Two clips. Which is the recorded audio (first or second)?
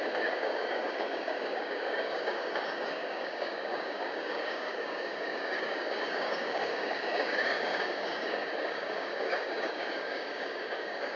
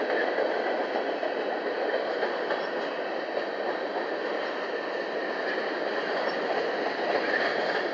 second